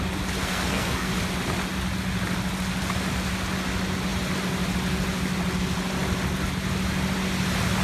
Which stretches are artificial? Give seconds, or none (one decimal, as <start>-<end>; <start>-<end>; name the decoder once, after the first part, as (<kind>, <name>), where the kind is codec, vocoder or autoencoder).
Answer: 0.4-1.1 (codec, SNAC)